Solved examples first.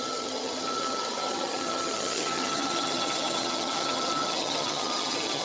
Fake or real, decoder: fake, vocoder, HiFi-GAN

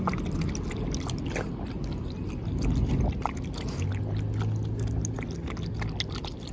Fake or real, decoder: real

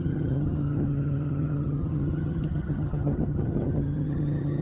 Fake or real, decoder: fake, vocoder, HiFi-GAN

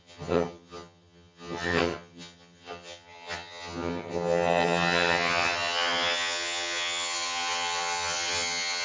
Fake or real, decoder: fake, vocoder, HiFi-GAN